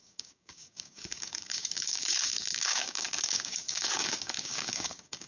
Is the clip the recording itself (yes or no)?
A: no